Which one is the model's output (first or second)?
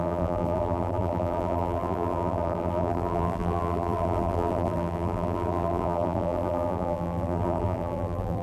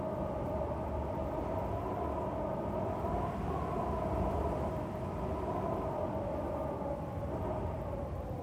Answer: first